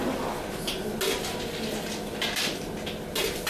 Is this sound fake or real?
real